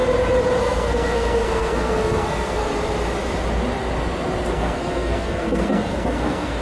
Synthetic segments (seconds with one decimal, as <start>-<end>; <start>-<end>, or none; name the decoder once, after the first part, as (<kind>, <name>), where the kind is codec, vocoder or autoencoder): 0.6-2.6 (codec, SNAC); 4.5-6.6